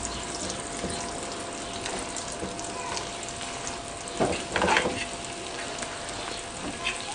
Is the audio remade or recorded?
recorded